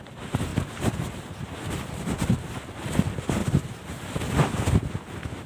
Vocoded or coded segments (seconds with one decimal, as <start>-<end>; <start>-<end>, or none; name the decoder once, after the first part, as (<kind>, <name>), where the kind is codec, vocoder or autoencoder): 0.5-1.9 (vocoder, BigVGAN v2)